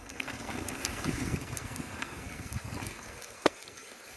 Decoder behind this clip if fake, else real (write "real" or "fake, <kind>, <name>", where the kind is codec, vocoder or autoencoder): fake, codec, SNAC